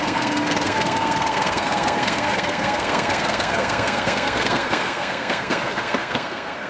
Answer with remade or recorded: remade